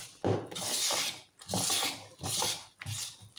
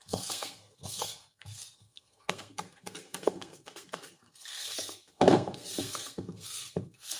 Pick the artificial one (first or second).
second